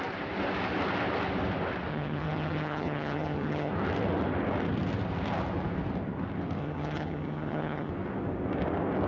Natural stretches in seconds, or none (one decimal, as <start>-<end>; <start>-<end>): 0.0-1.9; 3.7-6.6; 7.9-9.1